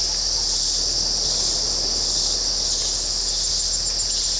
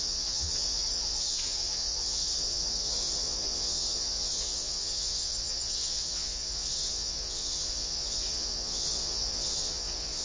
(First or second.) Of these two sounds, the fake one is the second